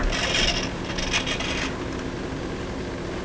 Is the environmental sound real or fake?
real